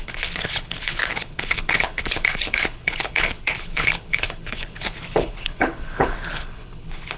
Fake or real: fake